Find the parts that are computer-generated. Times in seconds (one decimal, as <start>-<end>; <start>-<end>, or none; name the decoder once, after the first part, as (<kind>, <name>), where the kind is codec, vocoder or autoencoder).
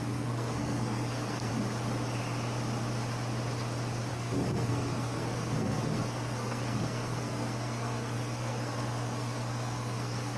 0.0-1.5 (codec, SNAC); 4.1-10.4